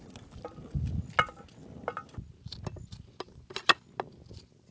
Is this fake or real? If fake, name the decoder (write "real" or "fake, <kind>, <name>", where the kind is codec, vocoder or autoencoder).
real